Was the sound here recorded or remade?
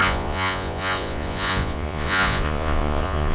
remade